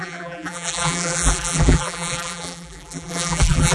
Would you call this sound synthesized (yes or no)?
yes